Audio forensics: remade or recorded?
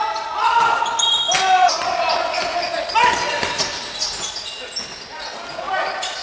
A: recorded